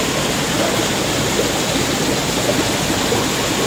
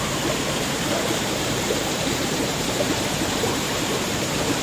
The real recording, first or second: first